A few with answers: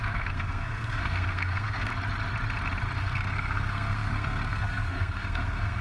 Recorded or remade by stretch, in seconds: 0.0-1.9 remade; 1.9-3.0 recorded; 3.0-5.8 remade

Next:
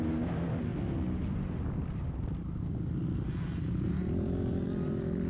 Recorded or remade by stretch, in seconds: 0.0-5.3 recorded

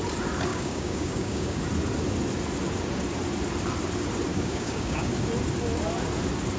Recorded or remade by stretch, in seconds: 0.0-0.5 recorded; 0.5-1.6 remade; 1.6-4.3 recorded; 4.3-5.1 remade; 5.1-6.6 recorded

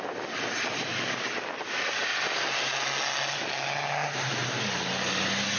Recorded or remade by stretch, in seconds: 0.0-5.6 recorded

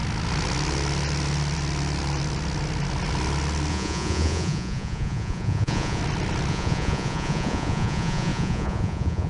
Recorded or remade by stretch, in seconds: 0.0-3.7 recorded; 3.7-6.0 remade; 6.0-6.5 recorded; 6.5-9.3 remade

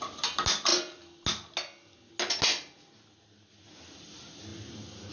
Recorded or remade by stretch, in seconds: 0.0-5.1 recorded